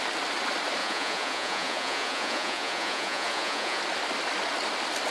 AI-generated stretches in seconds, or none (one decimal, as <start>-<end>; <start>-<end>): 0.8-3.8